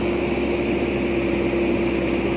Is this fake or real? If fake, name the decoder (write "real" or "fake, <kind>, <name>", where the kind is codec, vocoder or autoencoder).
real